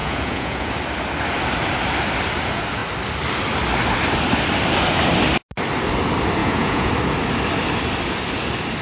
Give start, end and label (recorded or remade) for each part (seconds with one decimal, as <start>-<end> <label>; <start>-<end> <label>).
0.0-0.7 remade; 0.7-6.4 recorded; 6.4-6.9 remade; 6.9-8.8 recorded